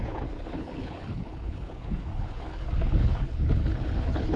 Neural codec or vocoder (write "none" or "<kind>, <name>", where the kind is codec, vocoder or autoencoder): codec, HILCodec